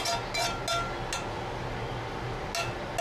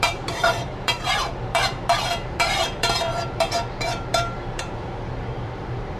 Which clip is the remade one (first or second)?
second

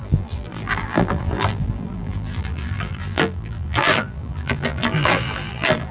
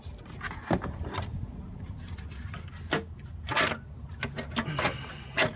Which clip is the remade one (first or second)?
first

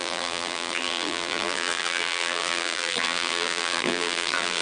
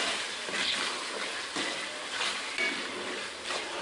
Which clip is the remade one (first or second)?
first